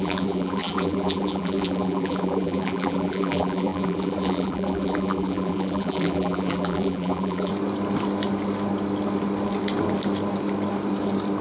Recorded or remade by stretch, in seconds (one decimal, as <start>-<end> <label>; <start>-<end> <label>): 0.0-7.5 remade; 7.5-11.4 recorded